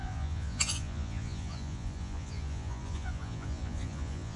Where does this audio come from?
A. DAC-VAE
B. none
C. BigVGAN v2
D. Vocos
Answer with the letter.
D